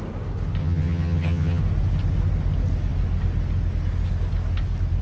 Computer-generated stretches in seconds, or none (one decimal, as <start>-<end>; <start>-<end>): 0.6-1.6